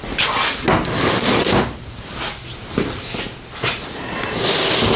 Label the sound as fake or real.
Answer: real